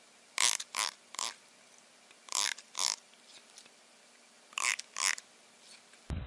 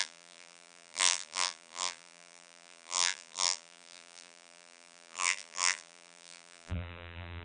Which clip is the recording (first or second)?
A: first